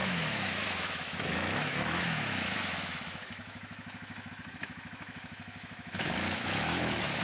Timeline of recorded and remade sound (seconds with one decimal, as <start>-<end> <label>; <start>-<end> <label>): 0.0-7.2 remade